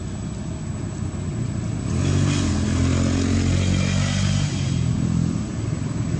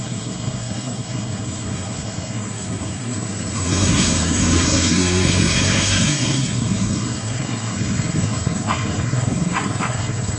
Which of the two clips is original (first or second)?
first